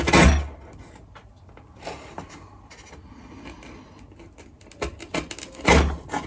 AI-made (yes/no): no